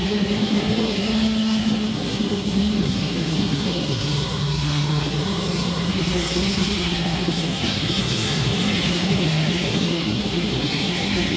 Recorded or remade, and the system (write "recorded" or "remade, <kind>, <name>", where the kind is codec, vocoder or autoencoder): remade, codec, SNAC